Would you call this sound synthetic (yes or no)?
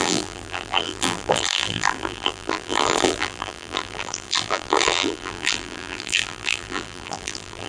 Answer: yes